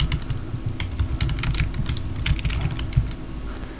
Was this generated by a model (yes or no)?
no